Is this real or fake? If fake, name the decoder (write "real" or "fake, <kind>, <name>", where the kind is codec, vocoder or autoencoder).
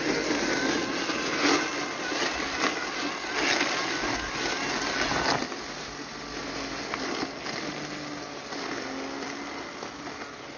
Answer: real